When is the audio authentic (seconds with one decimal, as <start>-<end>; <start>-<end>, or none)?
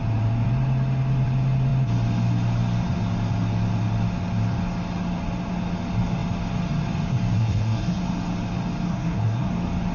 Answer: 0.0-7.4; 8.0-8.9; 9.5-9.9